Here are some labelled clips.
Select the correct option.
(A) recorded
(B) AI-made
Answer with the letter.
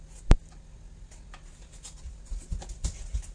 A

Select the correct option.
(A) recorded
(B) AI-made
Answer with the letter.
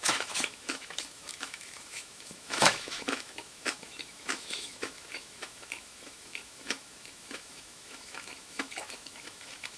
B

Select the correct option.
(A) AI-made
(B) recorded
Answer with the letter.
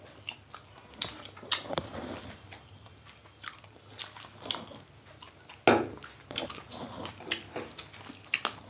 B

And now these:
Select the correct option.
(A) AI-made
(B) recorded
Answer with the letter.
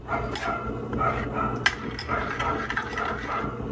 B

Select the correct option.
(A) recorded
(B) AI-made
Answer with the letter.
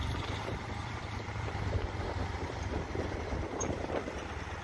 B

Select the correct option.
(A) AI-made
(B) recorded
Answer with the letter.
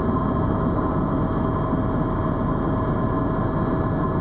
B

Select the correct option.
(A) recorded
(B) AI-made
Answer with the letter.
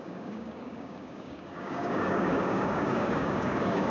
B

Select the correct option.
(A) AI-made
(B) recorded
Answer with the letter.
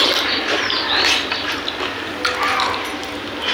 B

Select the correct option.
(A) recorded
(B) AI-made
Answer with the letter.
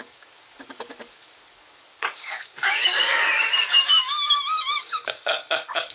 B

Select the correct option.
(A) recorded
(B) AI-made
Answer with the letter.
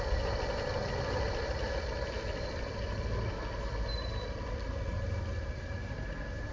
A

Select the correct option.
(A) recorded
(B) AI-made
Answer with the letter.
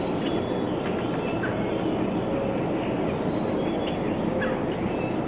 A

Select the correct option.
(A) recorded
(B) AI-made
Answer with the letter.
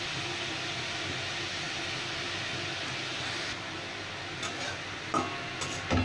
A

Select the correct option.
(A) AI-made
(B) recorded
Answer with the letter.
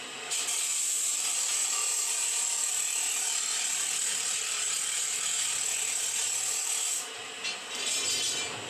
B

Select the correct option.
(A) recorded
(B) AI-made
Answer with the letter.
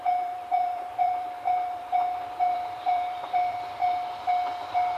B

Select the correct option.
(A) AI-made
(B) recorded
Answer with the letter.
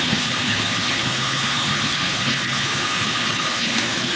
A